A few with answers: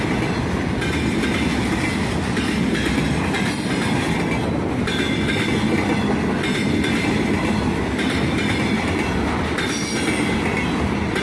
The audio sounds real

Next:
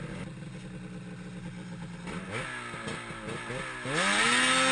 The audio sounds real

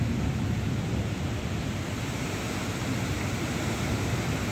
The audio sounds fake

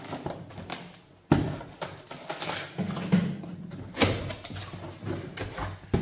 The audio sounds real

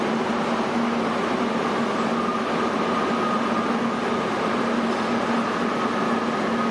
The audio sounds real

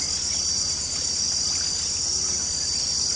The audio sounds real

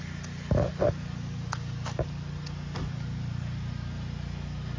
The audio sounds real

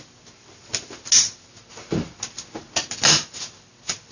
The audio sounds real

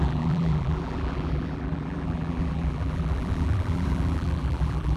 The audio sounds fake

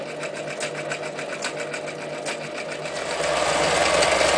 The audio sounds real